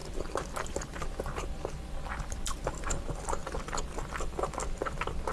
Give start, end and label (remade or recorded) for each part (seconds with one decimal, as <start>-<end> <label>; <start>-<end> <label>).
0.0-5.3 recorded